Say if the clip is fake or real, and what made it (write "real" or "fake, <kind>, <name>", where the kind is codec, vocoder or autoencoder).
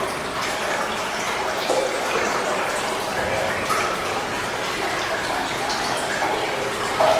real